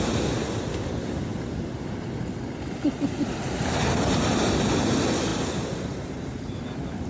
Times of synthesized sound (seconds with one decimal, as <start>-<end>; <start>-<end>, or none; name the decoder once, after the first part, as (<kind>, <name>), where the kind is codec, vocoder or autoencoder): 5.3-6.6 (vocoder, BigVGAN v2)